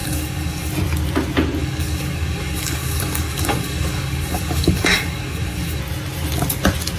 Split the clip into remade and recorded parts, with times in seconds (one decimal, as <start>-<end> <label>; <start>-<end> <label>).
0.0-0.7 remade; 0.7-1.6 recorded; 1.6-5.8 remade; 5.8-7.0 recorded